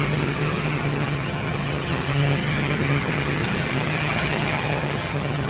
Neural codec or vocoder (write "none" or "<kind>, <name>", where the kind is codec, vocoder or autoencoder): vocoder, HiFi-GAN